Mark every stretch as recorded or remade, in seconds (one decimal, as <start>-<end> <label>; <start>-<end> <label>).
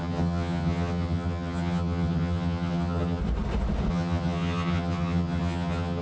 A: 0.0-3.2 remade; 3.2-3.9 recorded; 3.9-6.0 remade